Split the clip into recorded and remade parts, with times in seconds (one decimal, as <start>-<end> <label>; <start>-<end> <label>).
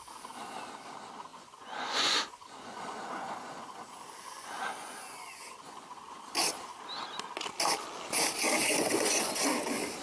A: 0.0-1.3 recorded; 1.3-6.2 remade; 6.2-8.6 recorded; 8.6-9.3 remade; 9.3-10.0 recorded